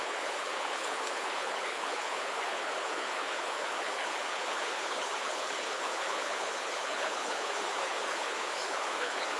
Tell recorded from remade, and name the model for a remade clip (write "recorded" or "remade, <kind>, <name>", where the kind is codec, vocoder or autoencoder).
remade, codec, HILCodec